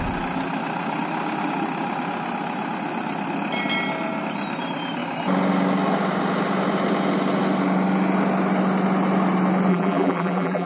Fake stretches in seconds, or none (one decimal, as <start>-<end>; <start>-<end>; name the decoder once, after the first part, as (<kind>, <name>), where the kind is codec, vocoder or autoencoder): 9.7-10.7 (vocoder, BigVGAN v2)